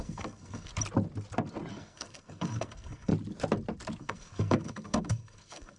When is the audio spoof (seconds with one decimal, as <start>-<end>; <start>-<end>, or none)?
0.0-0.7; 1.7-3.1; 4.0-5.8